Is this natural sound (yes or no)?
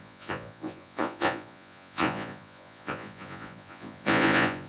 no